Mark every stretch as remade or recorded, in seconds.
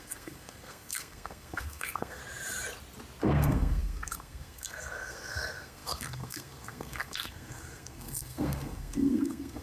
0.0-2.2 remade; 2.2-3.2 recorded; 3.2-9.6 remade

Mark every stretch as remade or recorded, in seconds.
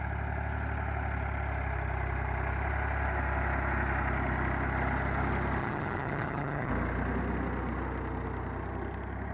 0.0-5.6 recorded; 5.6-6.7 remade; 6.7-9.3 recorded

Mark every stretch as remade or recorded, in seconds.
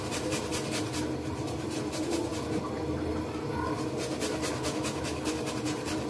0.0-0.5 remade; 0.5-1.3 recorded; 1.3-2.3 remade; 2.3-5.5 recorded; 5.5-6.1 remade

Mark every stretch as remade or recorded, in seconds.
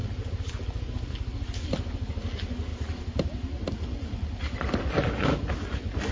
0.0-6.1 recorded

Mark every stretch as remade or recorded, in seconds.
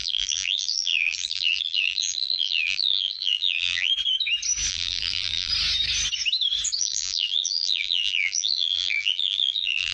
0.0-3.9 remade; 3.9-4.7 recorded; 4.7-5.5 remade; 5.5-6.8 recorded; 6.8-9.9 remade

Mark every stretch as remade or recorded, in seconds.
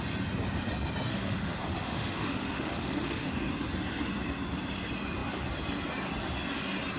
0.0-1.1 recorded; 1.1-3.5 remade; 3.5-7.0 recorded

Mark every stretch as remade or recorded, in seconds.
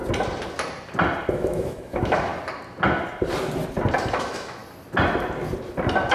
0.0-1.3 recorded; 1.3-2.3 remade; 2.3-4.1 recorded; 4.1-4.6 remade; 4.6-6.1 recorded